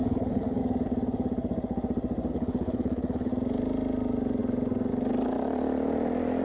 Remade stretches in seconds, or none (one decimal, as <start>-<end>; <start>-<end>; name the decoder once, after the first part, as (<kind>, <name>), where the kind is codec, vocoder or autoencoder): 0.0-0.6 (codec, HILCodec); 2.3-3.3